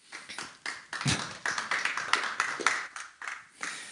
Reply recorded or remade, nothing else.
recorded